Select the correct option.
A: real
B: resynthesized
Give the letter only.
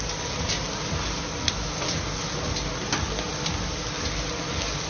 A